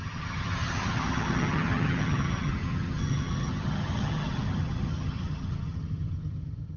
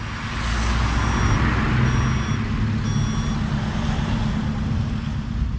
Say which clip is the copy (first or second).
first